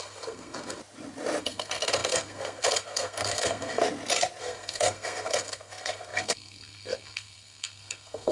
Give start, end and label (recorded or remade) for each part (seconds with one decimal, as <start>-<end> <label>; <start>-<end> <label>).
0.0-0.8 remade; 0.8-1.4 recorded; 1.4-3.8 remade; 3.8-4.4 recorded; 4.4-8.3 remade